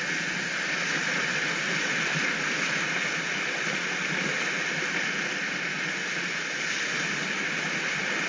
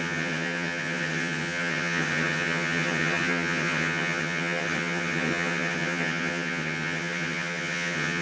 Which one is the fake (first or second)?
second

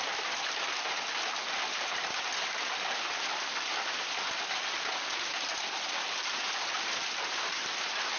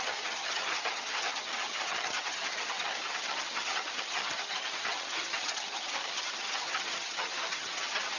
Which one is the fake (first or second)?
second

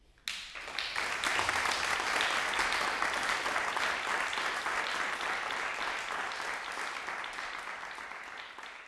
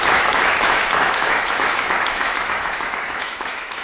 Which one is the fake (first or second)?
second